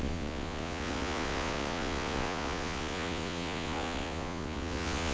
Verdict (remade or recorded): remade